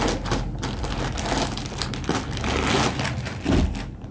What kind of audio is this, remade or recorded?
recorded